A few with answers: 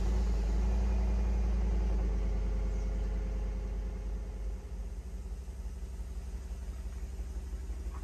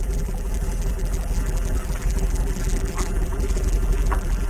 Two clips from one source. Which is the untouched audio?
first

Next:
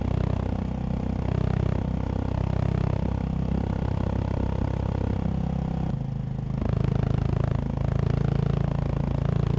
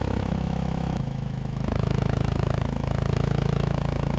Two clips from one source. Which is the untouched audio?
first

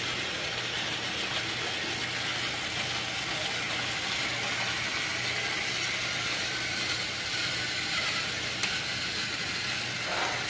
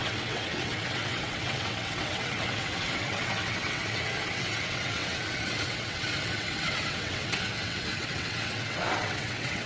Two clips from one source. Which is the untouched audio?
first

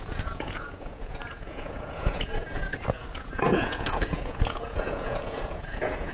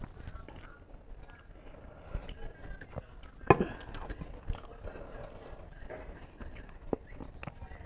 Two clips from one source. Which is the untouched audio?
second